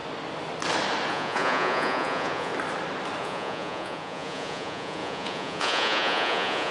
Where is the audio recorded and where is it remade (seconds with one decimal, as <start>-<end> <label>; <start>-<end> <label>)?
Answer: 0.0-1.1 recorded; 1.1-2.5 remade; 2.5-3.2 recorded; 3.2-6.7 remade